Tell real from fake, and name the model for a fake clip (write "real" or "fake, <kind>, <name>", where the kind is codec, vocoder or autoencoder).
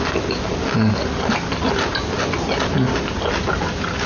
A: real